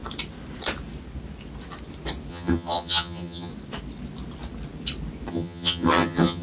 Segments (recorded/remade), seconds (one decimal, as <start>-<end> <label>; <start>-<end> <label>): 0.0-2.3 recorded; 2.3-3.5 remade; 3.5-5.3 recorded; 5.3-6.4 remade